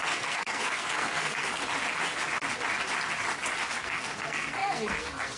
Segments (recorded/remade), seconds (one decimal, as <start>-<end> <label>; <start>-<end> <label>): 0.0-1.6 remade; 1.6-3.8 recorded; 3.8-5.4 remade